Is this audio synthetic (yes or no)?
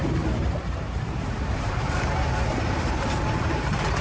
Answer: yes